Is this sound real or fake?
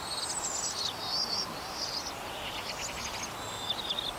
real